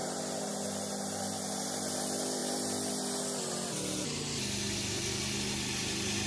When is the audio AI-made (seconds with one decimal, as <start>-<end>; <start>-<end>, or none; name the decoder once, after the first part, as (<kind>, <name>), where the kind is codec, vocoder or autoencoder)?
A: 0.0-0.5 (vocoder, BigVGAN v2)